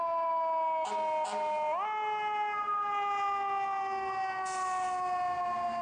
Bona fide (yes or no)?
yes